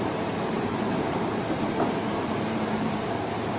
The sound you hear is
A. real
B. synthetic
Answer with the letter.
B